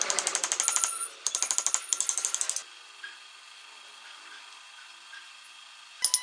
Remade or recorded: recorded